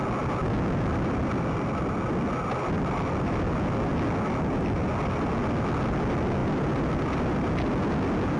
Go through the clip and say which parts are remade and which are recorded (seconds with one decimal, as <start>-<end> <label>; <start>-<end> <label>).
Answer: 0.0-6.4 recorded; 6.4-7.6 remade; 7.6-8.4 recorded